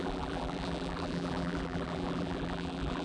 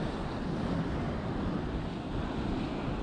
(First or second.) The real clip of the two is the second